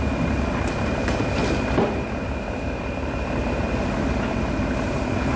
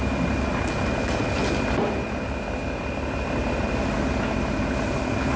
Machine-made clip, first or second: first